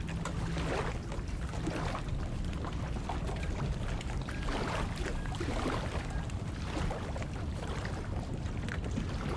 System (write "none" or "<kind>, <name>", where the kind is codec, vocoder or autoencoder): none